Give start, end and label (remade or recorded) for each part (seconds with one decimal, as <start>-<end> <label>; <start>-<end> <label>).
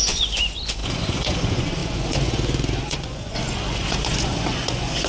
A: 0.0-5.1 remade